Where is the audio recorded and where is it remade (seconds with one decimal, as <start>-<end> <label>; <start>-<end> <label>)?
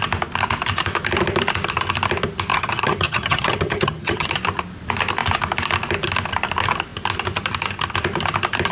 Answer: 0.0-2.5 recorded; 2.5-4.3 remade; 4.3-8.7 recorded